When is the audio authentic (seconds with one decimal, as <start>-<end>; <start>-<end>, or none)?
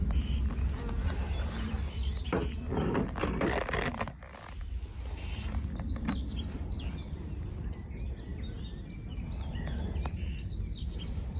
0.0-11.4